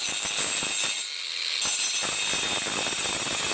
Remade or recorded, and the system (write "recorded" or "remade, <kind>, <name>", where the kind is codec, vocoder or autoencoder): recorded